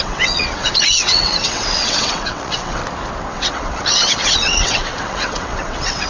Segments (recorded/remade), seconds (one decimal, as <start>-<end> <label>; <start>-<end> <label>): 0.0-2.8 remade; 2.8-3.3 recorded; 3.3-6.1 remade